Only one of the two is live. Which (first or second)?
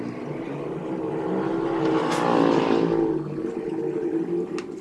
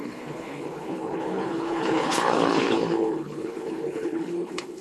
first